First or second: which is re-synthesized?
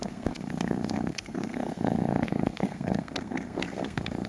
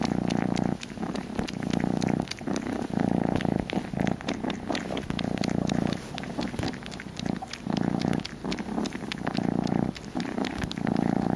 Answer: first